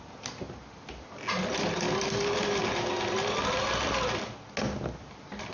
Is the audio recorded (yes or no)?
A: yes